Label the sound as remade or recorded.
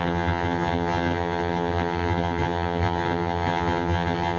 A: remade